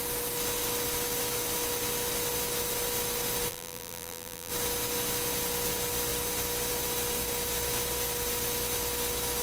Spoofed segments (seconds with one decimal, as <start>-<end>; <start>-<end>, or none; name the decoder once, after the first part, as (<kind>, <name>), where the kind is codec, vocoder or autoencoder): 3.5-4.5 (vocoder, BigVGAN v2)